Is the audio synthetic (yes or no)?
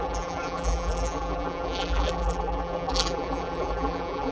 yes